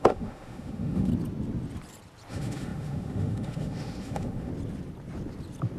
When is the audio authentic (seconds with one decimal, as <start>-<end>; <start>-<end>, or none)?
1.1-2.3; 4.5-5.8